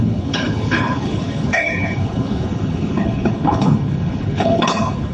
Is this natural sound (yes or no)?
no